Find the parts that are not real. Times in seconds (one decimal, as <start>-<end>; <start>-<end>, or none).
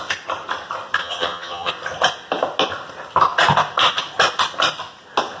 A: 1.0-1.7